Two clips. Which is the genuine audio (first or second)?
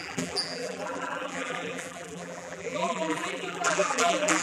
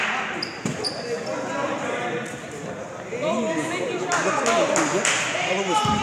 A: second